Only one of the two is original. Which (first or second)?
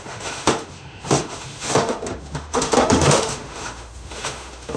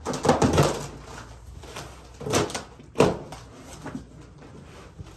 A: second